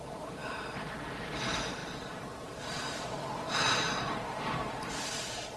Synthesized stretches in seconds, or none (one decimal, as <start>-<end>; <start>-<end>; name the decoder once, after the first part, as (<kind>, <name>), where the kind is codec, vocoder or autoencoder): 0.0-5.6 (vocoder, BigVGAN v2)